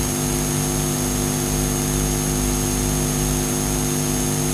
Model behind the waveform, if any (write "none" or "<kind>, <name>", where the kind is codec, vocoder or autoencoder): none